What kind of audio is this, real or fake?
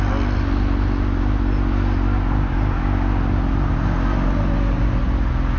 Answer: real